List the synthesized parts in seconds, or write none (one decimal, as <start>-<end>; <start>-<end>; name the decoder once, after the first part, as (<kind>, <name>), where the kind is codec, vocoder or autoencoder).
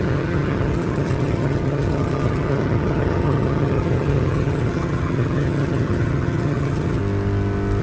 0.0-7.0 (vocoder, HiFi-GAN)